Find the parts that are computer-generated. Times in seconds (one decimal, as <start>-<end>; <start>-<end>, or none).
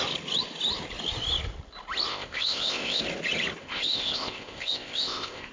2.1-3.0; 3.6-5.5